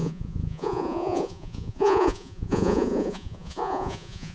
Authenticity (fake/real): fake